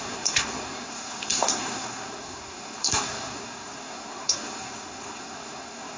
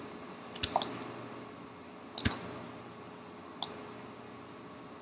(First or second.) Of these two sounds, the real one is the second